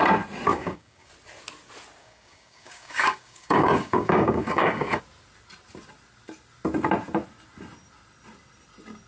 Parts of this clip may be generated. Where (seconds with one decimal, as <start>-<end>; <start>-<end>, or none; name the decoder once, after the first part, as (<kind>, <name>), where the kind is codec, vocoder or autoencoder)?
0.5-1.1 (codec, DAC); 2.0-5.0